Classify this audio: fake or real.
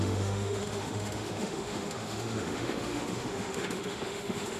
fake